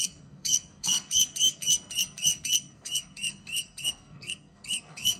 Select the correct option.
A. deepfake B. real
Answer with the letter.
A